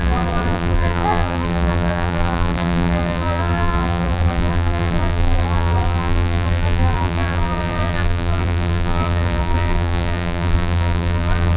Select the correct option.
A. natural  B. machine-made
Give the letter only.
B